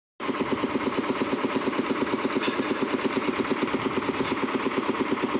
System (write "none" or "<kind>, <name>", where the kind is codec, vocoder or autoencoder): none